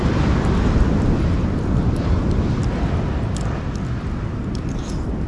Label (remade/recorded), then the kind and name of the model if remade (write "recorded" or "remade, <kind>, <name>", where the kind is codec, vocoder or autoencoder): recorded